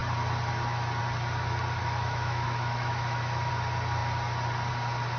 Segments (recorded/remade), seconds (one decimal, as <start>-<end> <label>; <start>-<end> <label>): 0.0-1.8 recorded; 1.8-3.5 remade; 3.5-5.2 recorded